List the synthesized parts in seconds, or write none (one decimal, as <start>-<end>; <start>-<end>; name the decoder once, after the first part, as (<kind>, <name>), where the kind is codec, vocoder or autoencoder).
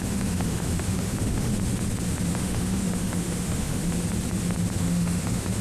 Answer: 0.0-1.5 (autoencoder, DAC-VAE); 2.3-3.8; 4.8-5.6